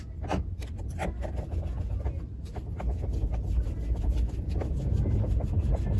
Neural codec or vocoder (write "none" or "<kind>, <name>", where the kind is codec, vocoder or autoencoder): none